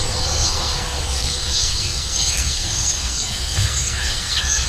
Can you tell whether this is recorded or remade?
remade